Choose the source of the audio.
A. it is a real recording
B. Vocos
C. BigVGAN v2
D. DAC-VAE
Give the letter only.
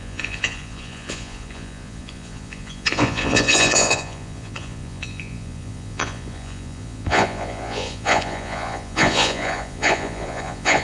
B